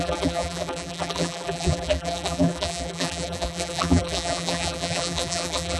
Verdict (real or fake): fake